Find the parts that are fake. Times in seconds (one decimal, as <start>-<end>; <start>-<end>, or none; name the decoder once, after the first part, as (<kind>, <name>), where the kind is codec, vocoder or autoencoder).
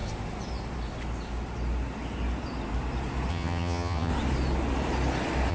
3.3-4.1 (vocoder, HiFi-GAN)